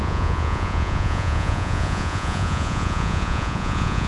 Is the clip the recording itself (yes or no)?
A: no